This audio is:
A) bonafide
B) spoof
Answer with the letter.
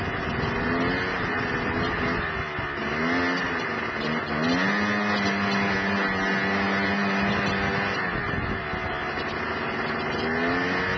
A